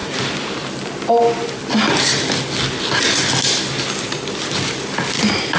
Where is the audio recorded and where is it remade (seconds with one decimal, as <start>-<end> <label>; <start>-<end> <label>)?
0.0-5.6 recorded